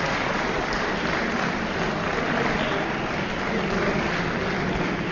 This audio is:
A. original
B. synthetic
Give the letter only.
A